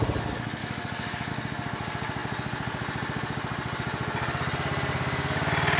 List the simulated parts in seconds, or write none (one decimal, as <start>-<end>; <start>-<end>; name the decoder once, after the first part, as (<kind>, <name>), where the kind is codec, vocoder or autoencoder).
0.6-1.3 (autoencoder, DAC-VAE)